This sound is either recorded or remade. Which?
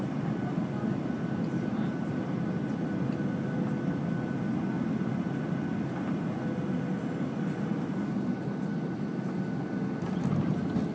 recorded